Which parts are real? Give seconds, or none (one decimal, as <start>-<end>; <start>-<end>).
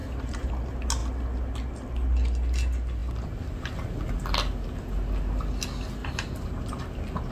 0.5-6.0; 6.8-7.3